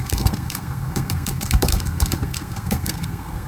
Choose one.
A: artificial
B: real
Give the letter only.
A